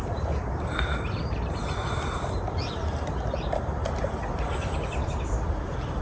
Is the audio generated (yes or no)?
yes